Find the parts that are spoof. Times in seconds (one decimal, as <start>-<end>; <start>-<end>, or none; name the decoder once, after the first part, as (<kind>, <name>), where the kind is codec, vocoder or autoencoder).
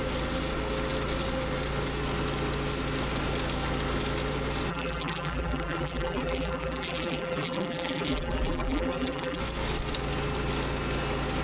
4.7-9.4 (vocoder, BigVGAN v2)